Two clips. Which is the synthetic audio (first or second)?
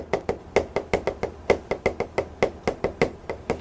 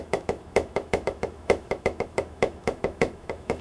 second